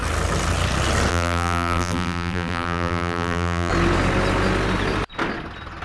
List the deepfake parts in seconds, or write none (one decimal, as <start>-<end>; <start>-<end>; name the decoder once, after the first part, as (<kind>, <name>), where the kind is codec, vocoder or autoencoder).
1.1-3.7 (vocoder, BigVGAN v2)